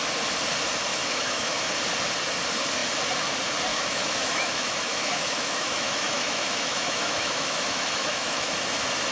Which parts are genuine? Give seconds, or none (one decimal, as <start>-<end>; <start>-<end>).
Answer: 0.0-0.9; 1.7-3.7; 8.5-9.1

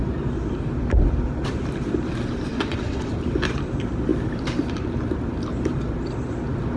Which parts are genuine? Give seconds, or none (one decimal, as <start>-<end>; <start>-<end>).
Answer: 0.0-2.5; 3.1-6.8

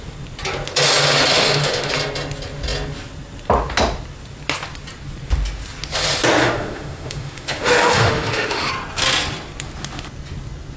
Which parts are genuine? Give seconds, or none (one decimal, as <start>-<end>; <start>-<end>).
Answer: 0.0-1.3; 1.9-6.4; 8.7-10.8

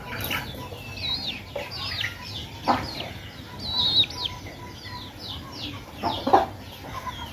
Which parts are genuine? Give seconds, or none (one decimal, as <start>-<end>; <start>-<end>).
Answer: 0.0-1.0; 1.9-7.3

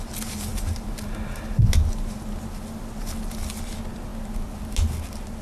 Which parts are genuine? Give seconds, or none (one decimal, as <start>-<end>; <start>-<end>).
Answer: 0.0-5.4

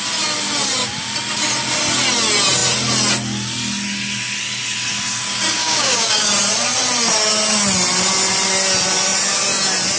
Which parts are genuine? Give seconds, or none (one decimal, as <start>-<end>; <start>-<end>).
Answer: 0.0-5.6; 6.3-10.0

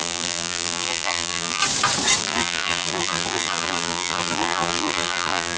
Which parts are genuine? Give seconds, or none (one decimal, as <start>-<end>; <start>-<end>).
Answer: 1.6-2.2

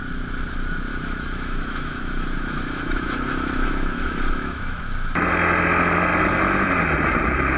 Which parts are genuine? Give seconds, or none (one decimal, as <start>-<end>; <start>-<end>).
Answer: 0.0-0.9; 4.8-7.6